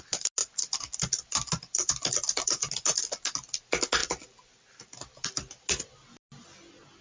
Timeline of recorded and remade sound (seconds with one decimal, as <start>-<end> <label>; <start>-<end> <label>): 0.0-7.0 recorded